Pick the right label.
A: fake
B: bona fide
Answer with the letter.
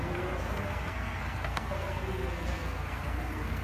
A